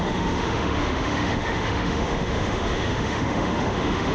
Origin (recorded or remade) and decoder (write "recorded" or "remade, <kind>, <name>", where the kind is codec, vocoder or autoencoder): remade, autoencoder, DAC-VAE